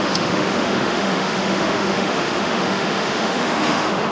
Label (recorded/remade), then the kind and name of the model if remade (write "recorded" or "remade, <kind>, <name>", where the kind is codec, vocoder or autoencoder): remade, autoencoder, DAC-VAE